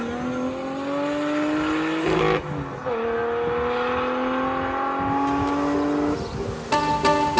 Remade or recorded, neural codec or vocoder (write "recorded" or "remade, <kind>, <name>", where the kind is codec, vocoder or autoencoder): recorded